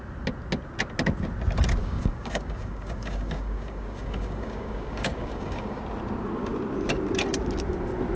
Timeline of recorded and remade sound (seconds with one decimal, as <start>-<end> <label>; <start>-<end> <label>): 0.0-1.8 recorded; 1.8-5.8 remade; 5.8-8.2 recorded

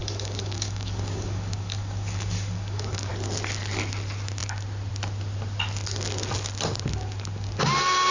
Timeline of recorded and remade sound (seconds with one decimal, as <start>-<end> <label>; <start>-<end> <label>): 0.0-3.1 remade; 3.1-8.1 recorded